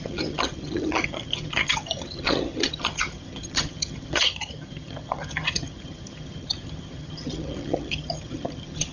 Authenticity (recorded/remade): remade